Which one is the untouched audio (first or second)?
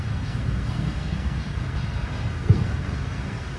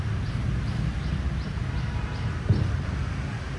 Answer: second